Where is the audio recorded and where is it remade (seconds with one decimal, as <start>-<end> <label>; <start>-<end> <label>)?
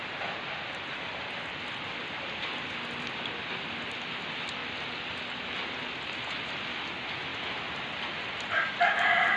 0.0-9.4 recorded